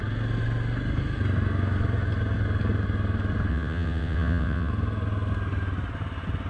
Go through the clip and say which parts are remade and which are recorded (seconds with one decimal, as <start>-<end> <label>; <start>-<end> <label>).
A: 0.0-3.5 recorded; 3.5-4.7 remade; 4.7-6.5 recorded